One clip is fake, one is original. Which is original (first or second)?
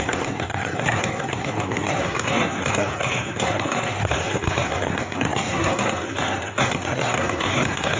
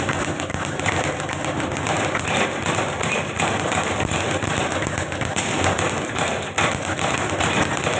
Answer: second